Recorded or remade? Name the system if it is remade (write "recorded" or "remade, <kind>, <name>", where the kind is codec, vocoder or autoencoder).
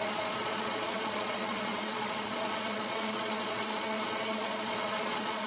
remade, vocoder, Vocos